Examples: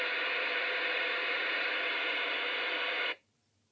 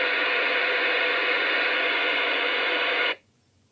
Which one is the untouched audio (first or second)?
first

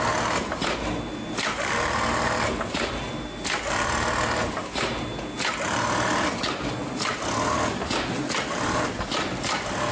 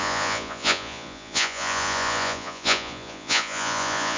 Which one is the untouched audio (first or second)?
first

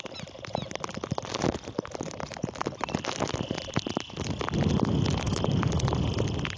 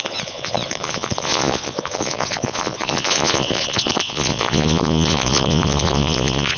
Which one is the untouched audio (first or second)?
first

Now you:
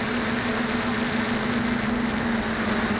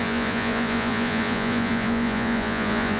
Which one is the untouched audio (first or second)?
first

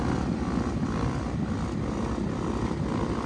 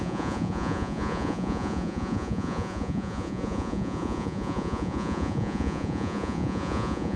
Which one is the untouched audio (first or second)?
first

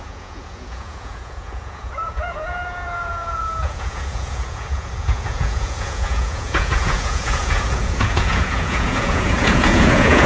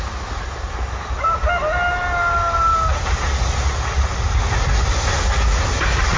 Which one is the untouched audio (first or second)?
second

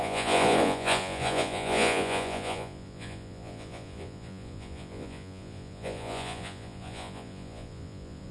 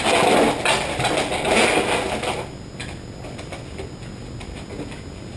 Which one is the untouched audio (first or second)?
second